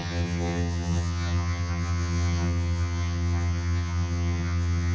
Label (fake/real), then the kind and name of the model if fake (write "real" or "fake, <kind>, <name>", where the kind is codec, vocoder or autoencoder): fake, vocoder, HiFi-GAN